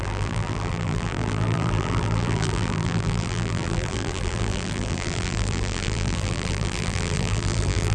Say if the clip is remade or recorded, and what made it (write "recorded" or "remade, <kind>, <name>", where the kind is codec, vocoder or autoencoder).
remade, vocoder, BigVGAN v2